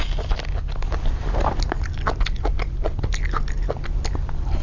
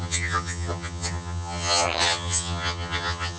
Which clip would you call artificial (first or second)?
second